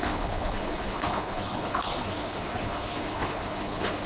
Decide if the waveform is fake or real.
fake